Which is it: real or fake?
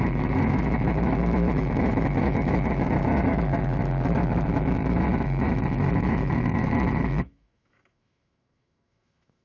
fake